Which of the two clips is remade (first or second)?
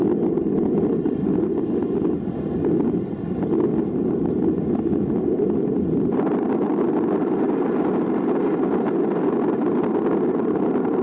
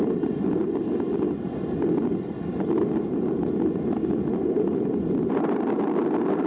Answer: first